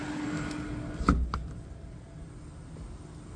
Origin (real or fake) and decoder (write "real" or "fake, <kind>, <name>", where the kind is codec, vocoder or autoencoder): real